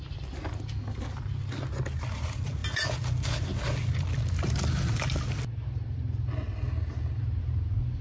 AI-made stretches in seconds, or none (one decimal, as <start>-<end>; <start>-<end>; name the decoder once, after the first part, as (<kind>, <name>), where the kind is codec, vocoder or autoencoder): none